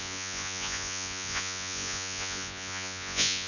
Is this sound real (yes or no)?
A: no